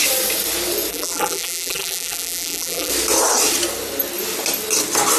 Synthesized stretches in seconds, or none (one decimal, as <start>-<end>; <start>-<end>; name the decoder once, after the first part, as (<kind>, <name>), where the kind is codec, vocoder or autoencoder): 0.9-2.9 (vocoder, BigVGAN v2)